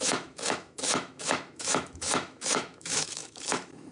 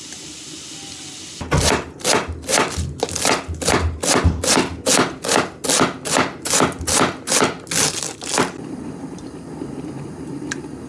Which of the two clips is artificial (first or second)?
first